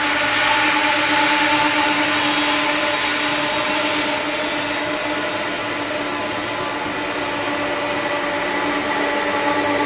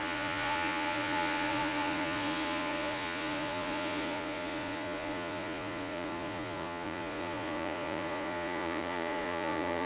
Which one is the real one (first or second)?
first